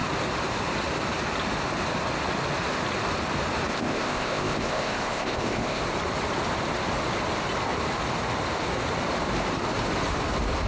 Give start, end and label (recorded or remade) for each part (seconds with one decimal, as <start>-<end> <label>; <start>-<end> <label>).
0.0-3.7 recorded; 3.7-5.8 remade; 5.8-10.7 recorded